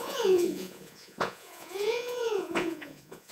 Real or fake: fake